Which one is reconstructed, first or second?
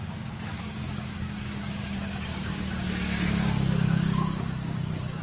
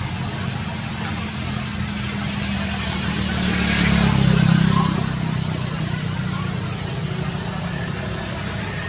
first